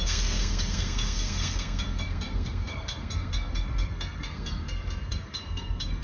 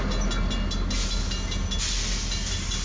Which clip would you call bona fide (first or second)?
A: second